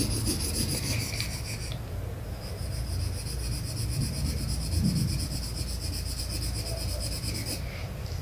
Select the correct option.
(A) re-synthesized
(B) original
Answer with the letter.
B